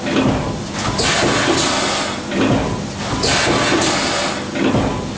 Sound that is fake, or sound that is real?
real